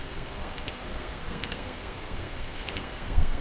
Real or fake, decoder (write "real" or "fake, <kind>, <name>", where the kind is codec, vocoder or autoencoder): fake, codec, SNAC